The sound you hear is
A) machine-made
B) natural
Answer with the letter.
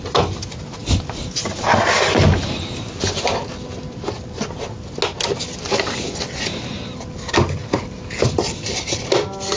B